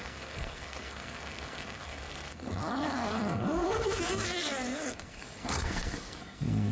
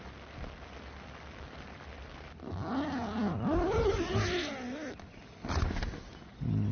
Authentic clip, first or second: second